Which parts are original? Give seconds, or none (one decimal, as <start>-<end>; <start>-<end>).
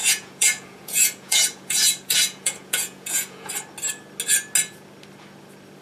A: 3.5-5.8